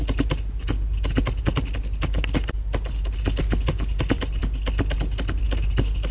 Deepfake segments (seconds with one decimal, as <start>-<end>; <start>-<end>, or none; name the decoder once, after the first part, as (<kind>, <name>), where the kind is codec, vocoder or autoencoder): none